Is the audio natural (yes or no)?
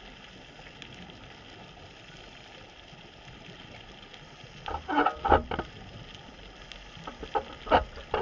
yes